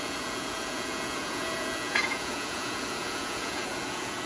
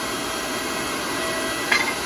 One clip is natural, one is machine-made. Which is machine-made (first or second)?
first